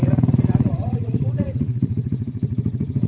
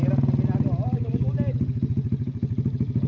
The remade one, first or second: first